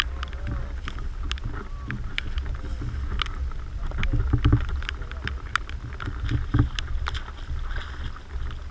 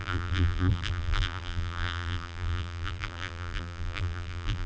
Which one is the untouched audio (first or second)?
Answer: first